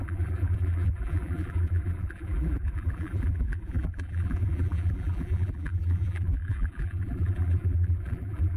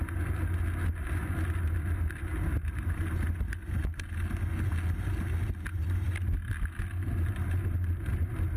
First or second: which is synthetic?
first